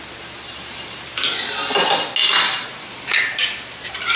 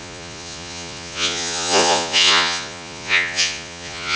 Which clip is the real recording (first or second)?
first